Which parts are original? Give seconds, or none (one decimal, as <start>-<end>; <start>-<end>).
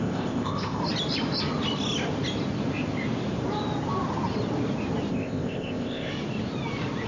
0.8-5.1; 6.1-7.1